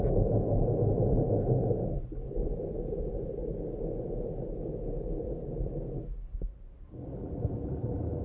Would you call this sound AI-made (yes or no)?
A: no